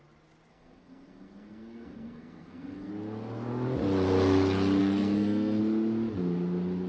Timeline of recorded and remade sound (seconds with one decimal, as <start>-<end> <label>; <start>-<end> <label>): 0.0-0.5 recorded; 0.5-2.9 remade; 2.9-4.8 recorded; 4.8-5.6 remade; 5.6-6.9 recorded